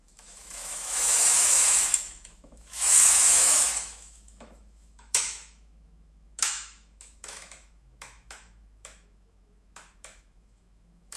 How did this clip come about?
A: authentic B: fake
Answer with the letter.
B